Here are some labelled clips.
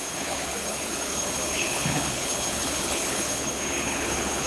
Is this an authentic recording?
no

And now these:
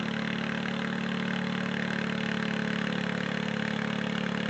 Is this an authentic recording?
yes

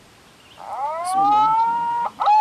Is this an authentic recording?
yes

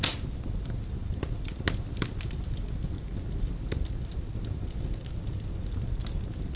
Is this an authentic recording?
yes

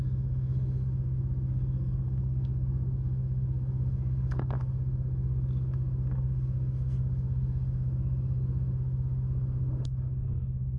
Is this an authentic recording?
no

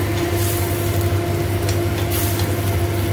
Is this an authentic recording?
yes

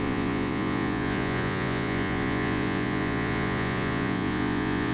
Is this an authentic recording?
no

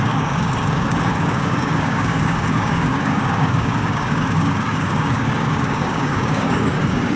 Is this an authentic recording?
no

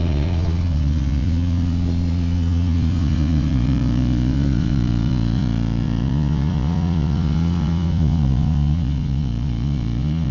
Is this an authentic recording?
no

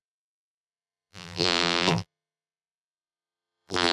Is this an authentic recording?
no